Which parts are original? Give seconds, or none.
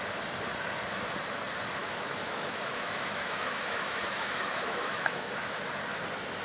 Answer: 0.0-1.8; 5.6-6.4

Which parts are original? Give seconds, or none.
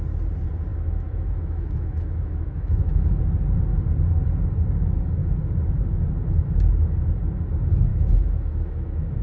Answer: 0.0-0.7; 3.2-7.9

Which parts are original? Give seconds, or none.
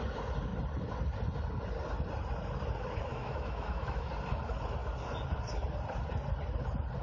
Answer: 0.0-3.1; 4.1-7.0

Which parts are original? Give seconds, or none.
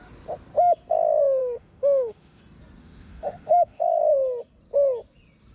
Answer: 0.0-1.4; 2.4-2.8; 4.0-5.5